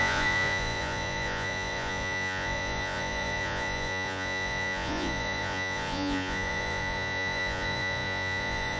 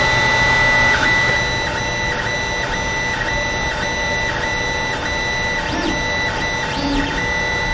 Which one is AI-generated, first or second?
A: first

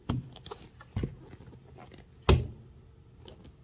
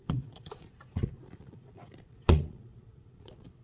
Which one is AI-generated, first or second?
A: second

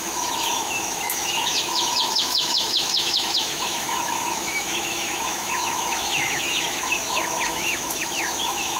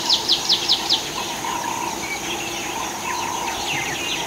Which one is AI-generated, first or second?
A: first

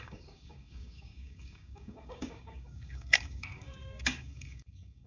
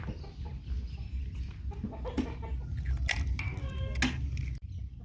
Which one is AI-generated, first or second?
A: first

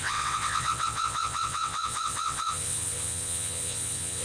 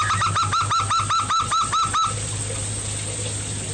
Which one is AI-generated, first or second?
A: first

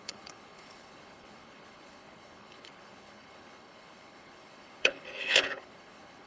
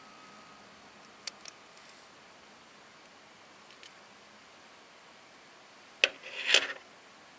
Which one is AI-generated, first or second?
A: first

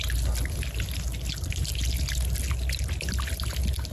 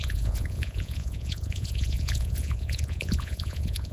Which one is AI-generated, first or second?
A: second